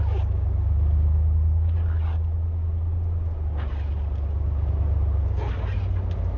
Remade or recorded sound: recorded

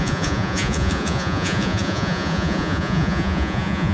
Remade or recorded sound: remade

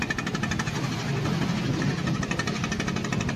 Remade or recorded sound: recorded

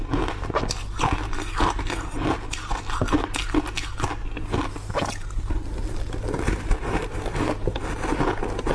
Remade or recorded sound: recorded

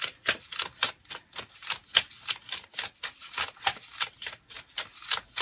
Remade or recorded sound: recorded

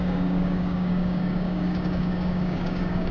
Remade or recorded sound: remade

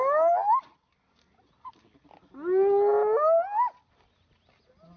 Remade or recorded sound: recorded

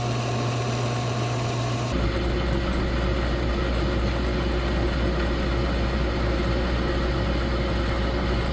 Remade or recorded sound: recorded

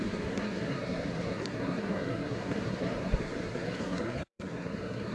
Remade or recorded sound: remade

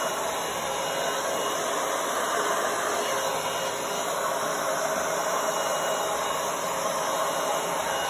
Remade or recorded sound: recorded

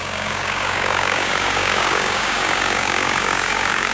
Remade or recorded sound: remade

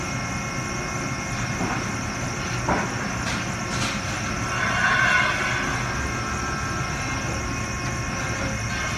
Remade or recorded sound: recorded